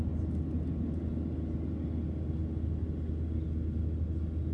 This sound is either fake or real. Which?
real